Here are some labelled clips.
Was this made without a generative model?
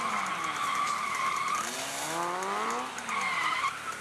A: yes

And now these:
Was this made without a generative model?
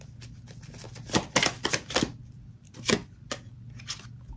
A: yes